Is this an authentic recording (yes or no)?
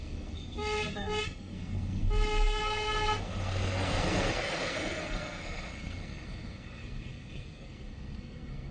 no